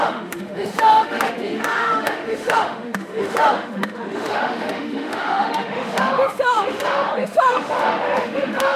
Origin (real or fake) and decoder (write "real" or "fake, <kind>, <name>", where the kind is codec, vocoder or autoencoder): fake, autoencoder, DAC-VAE